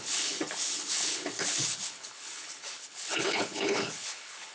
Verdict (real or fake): fake